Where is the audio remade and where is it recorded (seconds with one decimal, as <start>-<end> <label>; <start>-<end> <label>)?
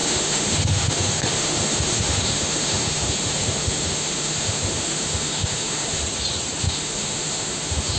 0.0-6.0 remade; 6.0-6.6 recorded; 6.6-8.0 remade